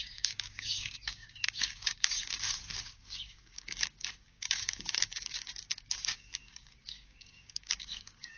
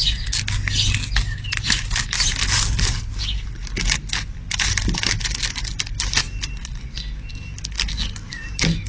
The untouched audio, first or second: second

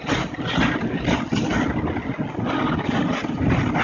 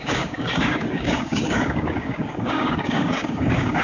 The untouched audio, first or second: first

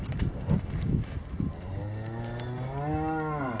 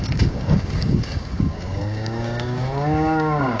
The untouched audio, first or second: first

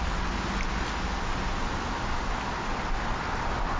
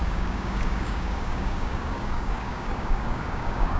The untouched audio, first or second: first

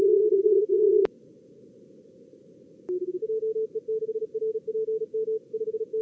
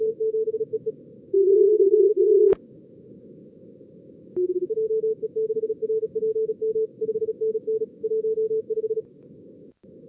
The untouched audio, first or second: first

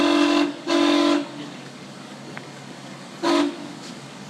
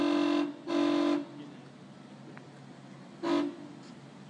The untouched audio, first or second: second